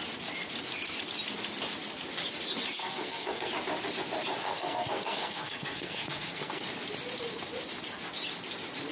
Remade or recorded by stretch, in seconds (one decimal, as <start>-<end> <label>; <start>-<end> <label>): 0.0-2.8 recorded; 2.8-3.5 remade; 3.5-4.4 recorded; 4.4-6.6 remade; 6.6-8.9 recorded